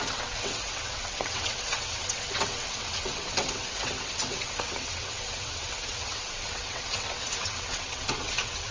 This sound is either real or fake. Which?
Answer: fake